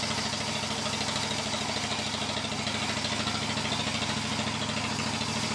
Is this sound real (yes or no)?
yes